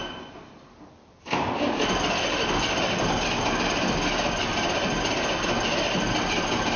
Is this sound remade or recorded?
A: recorded